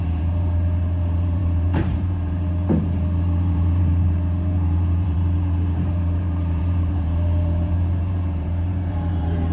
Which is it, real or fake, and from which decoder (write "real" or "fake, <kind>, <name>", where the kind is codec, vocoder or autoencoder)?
fake, vocoder, BigVGAN v2